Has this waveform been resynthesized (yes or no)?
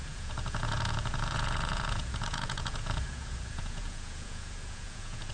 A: yes